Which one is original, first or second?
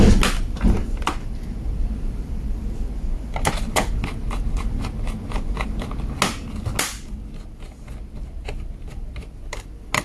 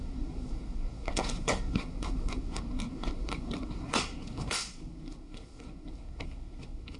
first